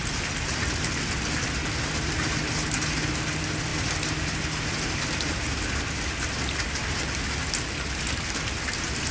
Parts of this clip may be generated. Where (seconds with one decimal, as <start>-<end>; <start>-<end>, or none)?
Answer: none